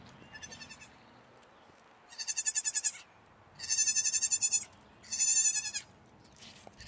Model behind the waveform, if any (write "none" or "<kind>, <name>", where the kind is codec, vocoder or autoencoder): none